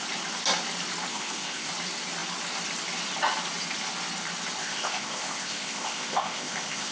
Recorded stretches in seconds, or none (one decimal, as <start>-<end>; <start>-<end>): 0.0-1.1; 1.7-4.6